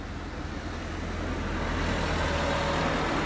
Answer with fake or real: real